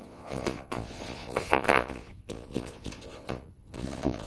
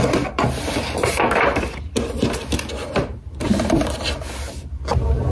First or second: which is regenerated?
first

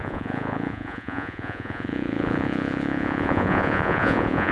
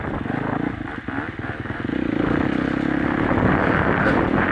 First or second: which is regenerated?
first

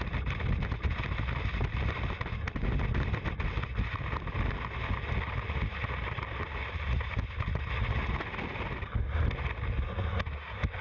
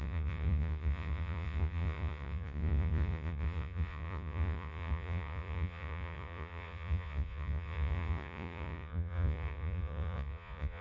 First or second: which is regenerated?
second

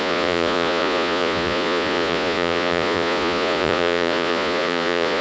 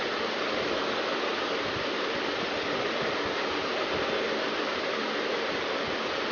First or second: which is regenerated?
first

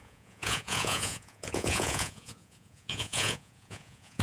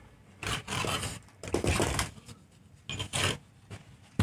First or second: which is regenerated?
first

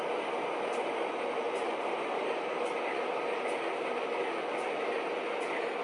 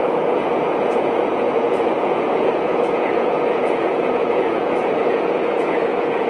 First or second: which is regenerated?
second